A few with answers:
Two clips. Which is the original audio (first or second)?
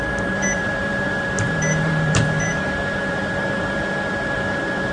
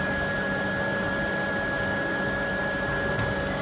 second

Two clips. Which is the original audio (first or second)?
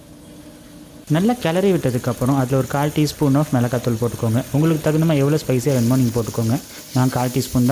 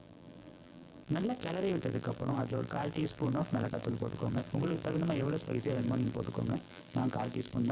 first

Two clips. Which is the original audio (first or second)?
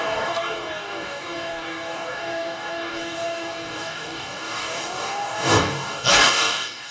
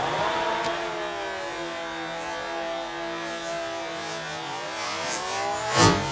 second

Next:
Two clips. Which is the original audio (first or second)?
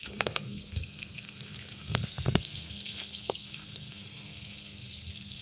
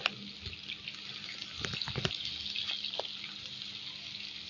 second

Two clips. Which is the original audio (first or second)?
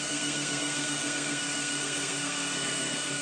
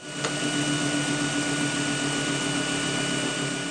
second